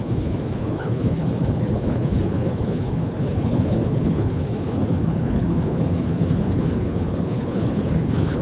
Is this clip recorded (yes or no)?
no